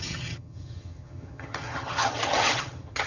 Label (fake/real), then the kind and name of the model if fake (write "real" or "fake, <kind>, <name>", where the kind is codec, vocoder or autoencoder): fake, vocoder, HiFi-GAN